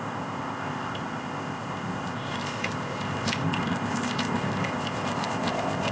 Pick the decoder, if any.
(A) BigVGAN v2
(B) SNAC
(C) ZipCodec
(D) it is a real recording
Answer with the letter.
C